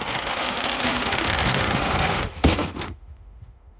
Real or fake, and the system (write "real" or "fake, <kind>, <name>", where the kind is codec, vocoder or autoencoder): fake, autoencoder, DAC-VAE